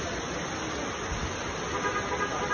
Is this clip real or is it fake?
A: real